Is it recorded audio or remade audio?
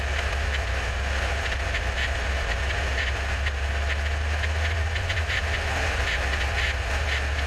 recorded